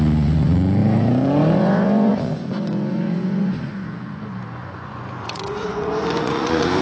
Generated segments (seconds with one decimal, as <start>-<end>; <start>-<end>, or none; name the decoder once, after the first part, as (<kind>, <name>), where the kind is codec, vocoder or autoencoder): 0.0-6.8 (vocoder, Vocos)